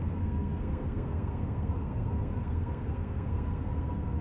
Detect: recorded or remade remade